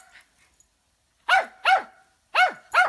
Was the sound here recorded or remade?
recorded